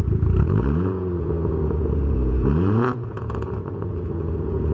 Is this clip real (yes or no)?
no